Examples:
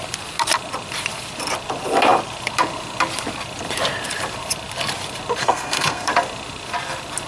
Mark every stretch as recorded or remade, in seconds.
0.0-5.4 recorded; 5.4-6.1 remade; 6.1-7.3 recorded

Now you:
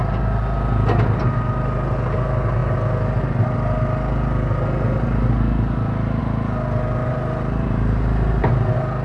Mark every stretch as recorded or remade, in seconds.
0.0-7.0 recorded; 7.0-8.0 remade; 8.0-9.0 recorded

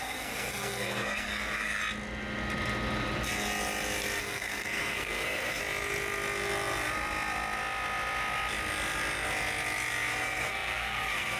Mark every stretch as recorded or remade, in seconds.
0.0-1.8 remade; 1.8-4.2 recorded; 4.2-5.6 remade; 5.6-10.2 recorded; 10.2-11.4 remade

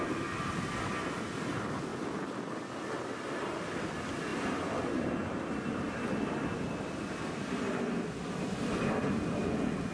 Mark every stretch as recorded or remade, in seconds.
0.0-9.9 recorded

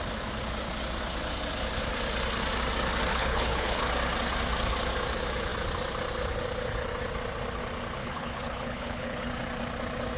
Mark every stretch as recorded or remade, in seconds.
0.0-3.1 recorded; 3.1-3.8 remade; 3.8-8.0 recorded; 8.0-9.3 remade; 9.3-10.2 recorded

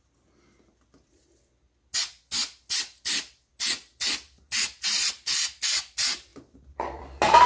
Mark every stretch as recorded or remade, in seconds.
0.0-7.5 recorded